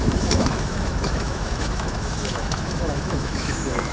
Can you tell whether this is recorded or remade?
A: remade